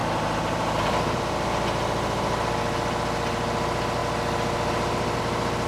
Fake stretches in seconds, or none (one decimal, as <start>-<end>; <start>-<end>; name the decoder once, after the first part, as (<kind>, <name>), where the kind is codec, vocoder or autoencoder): 0.0-1.2 (vocoder, BigVGAN v2)